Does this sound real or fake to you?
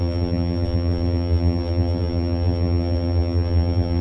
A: fake